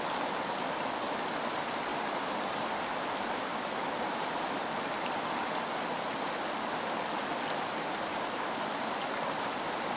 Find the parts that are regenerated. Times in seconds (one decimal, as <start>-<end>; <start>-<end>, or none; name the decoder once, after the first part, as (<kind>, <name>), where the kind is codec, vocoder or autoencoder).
none